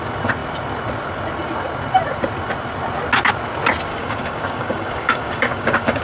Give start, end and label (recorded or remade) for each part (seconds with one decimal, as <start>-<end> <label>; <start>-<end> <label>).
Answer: 0.0-3.9 recorded; 3.9-6.0 remade